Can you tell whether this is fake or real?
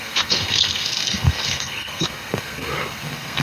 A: fake